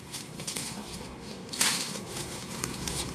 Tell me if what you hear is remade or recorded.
remade